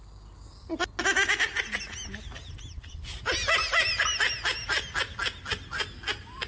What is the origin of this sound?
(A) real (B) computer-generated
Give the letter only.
A